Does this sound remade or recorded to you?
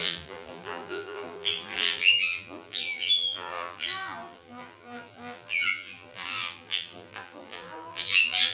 remade